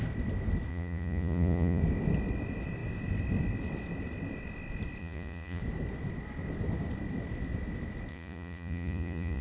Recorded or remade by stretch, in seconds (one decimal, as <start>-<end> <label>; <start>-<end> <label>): 0.0-0.7 recorded; 0.7-1.8 remade; 1.8-5.0 recorded; 5.0-5.6 remade; 5.6-8.1 recorded; 8.1-9.4 remade